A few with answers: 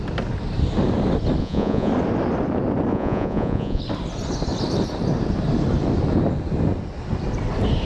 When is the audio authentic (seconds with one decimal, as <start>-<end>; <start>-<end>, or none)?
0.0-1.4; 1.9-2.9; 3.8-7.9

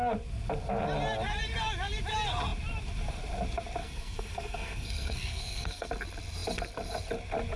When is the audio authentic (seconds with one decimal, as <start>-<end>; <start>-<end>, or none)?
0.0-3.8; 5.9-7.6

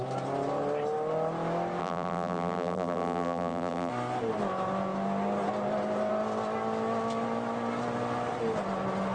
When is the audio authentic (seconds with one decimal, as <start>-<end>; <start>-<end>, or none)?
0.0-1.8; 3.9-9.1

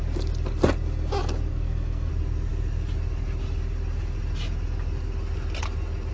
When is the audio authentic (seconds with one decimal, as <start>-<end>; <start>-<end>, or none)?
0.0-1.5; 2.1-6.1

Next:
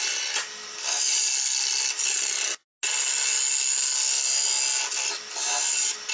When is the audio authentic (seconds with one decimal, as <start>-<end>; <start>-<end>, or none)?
0.0-6.1